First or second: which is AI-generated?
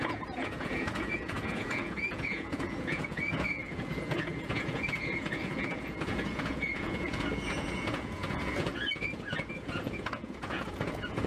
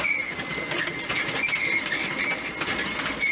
first